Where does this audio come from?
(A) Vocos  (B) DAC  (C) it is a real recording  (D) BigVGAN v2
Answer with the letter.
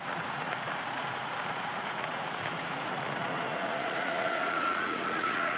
A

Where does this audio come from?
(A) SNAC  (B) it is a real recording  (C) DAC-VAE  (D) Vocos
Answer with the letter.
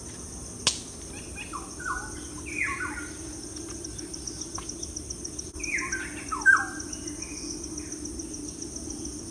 B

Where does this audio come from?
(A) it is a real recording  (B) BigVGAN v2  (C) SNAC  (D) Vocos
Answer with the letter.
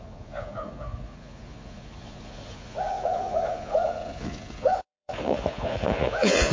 D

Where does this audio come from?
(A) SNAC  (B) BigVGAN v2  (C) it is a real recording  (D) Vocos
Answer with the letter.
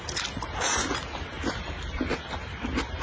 C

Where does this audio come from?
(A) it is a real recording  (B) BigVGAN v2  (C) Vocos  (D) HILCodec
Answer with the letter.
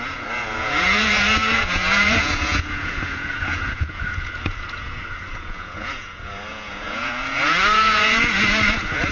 C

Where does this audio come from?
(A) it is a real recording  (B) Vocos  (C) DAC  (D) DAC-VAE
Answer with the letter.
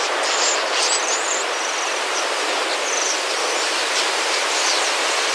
A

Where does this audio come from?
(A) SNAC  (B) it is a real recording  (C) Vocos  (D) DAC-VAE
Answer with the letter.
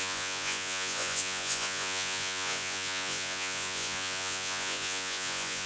C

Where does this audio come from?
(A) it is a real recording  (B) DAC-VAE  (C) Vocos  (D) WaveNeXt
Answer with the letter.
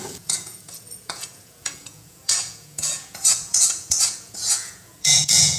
C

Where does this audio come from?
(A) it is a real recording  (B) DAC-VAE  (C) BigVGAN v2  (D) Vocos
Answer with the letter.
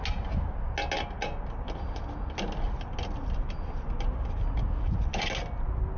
A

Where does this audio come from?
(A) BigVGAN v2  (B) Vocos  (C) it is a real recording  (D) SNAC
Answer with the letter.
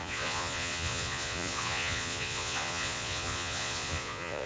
B